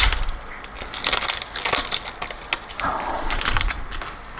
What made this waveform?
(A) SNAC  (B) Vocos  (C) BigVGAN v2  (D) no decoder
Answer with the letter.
D